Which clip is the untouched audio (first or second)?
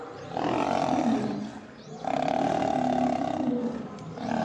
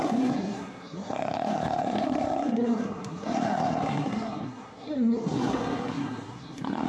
first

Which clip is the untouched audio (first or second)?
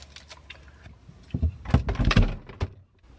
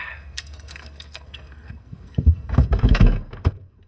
first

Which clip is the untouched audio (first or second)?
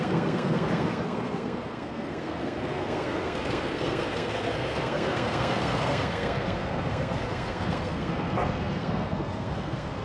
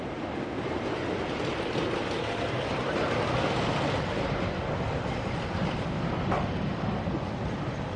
second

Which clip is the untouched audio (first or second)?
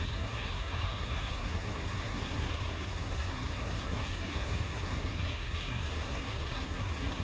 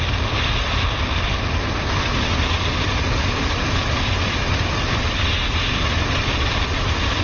second